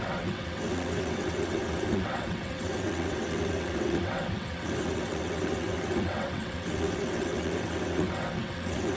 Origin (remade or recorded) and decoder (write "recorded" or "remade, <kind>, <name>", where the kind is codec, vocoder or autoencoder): remade, vocoder, WaveNeXt